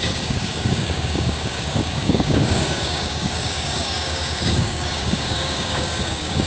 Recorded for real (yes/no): no